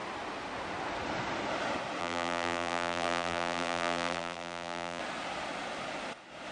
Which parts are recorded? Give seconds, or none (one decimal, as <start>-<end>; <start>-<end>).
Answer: 0.0-2.0; 5.0-6.5

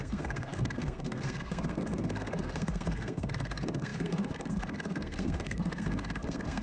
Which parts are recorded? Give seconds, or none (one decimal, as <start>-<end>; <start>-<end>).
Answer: none

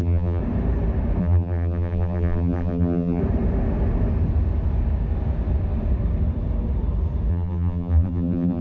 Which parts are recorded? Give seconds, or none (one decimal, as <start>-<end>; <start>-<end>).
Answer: 0.4-1.2; 3.2-7.3

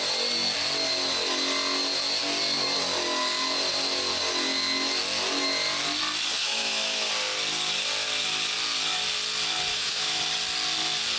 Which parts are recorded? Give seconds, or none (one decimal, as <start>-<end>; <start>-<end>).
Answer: 0.0-6.4; 7.1-9.7; 10.2-11.2

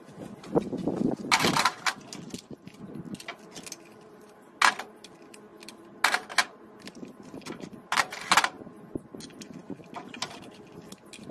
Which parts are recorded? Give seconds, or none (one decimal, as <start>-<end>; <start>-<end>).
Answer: 0.0-11.3

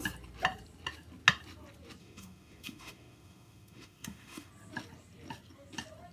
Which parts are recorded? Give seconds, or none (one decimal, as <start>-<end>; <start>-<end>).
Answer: 0.0-2.0; 4.5-6.1

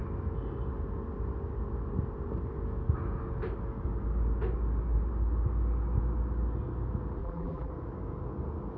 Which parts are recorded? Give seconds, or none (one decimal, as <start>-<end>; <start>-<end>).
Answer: 0.0-7.2; 7.7-8.8